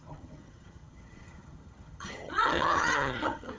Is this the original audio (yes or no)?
no